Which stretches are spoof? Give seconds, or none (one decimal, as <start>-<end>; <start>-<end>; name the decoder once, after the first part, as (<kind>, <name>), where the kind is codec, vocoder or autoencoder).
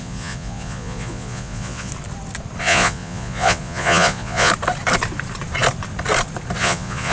0.0-1.9 (vocoder, Vocos); 2.6-4.5; 6.6-7.1